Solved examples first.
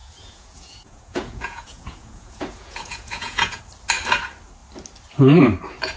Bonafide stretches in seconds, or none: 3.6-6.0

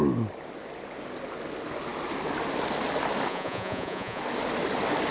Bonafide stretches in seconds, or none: 0.0-3.3; 4.2-5.1

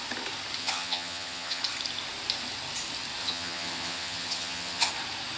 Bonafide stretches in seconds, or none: 0.0-0.6; 1.6-3.2; 4.9-5.4

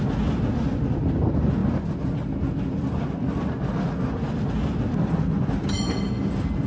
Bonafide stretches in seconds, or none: 0.0-6.7

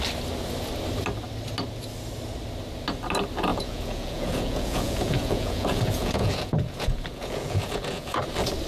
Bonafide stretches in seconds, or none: 0.0-3.5; 8.2-8.7

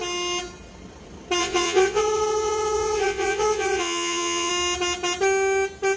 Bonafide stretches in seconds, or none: 0.0-1.4; 4.5-6.0

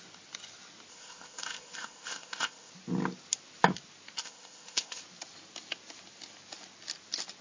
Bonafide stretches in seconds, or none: 0.0-0.9; 2.7-4.2; 5.0-7.4